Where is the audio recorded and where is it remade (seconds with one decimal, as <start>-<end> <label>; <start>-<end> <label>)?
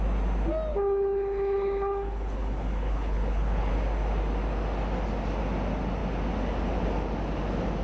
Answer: 0.0-0.7 recorded; 0.7-3.7 remade; 3.7-7.8 recorded